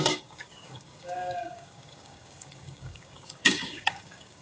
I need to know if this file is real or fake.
fake